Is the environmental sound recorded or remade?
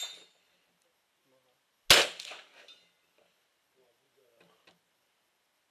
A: recorded